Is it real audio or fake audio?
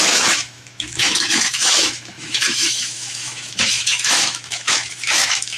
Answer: fake